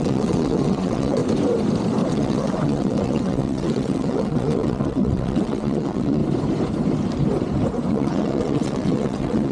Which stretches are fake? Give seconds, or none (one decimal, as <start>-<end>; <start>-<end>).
0.0-1.2; 2.1-6.2; 7.9-9.5